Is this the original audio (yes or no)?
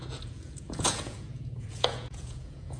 no